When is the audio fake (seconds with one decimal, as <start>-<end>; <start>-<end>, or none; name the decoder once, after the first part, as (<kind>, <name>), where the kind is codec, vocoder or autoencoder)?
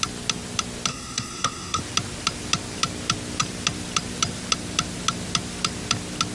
0.9-1.8 (codec, SNAC)